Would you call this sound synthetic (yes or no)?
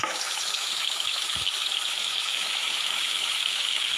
yes